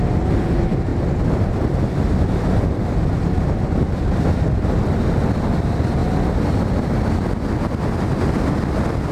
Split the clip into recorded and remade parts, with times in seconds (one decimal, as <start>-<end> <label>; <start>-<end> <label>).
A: 0.0-9.1 recorded